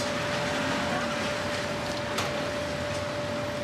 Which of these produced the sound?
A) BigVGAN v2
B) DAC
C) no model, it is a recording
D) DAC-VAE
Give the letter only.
C